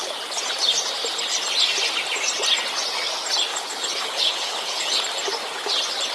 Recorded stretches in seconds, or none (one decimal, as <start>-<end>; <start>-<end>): 0.0-3.5; 5.0-6.1